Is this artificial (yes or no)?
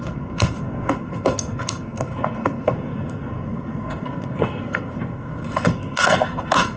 yes